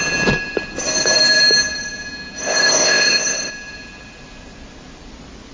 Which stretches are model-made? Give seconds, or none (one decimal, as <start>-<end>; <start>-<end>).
2.4-3.5